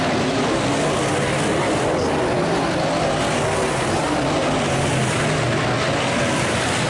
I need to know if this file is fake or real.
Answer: real